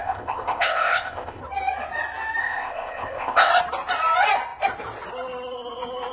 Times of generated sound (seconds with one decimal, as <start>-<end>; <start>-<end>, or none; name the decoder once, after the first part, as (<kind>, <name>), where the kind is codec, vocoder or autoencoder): 0.0-1.4 (codec, ZipCodec); 2.4-3.5